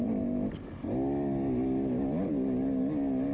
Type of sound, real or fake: real